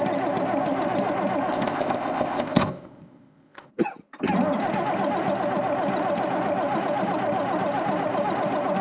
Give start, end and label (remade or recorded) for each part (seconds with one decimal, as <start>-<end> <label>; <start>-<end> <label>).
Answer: 0.0-1.5 recorded; 1.5-3.7 remade; 3.7-8.8 recorded